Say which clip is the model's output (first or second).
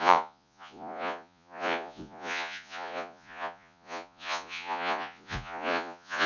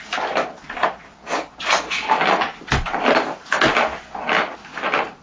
first